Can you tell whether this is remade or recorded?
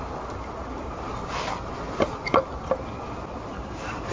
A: recorded